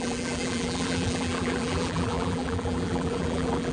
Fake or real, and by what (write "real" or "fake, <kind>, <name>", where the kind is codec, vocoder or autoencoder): fake, vocoder, BigVGAN v2